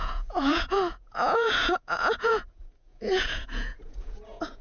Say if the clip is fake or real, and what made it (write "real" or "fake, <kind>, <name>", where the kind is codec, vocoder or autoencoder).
fake, vocoder, Vocos